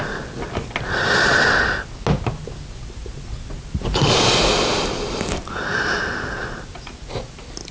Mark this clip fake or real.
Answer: real